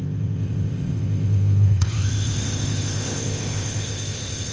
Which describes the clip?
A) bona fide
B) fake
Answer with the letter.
B